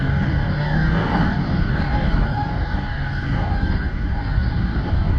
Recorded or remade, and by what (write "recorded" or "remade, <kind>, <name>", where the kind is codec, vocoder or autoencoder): remade, codec, DAC